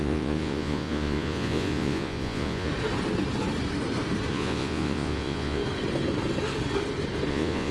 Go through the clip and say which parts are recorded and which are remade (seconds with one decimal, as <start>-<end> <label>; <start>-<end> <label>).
0.0-2.7 remade; 2.7-4.3 recorded; 4.3-5.6 remade; 5.6-7.3 recorded; 7.3-7.7 remade